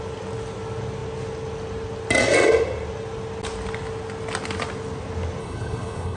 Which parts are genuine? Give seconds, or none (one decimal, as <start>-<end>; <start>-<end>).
0.0-5.4